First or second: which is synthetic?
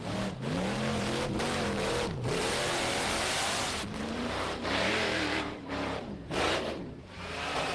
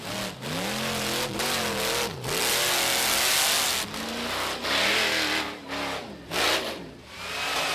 first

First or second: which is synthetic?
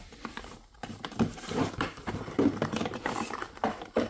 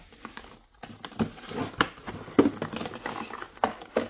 first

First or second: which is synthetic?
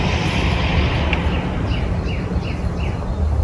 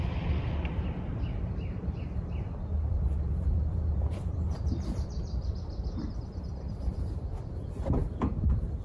second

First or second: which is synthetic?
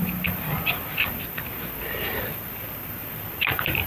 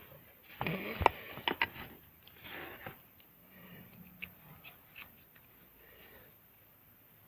first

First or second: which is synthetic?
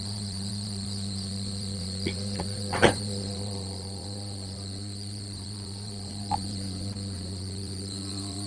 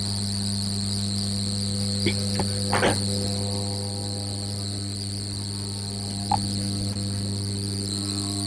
first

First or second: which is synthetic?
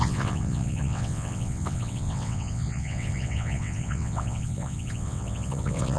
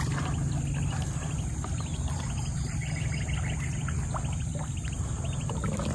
first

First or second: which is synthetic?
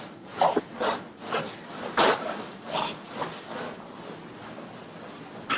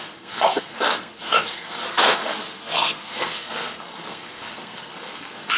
second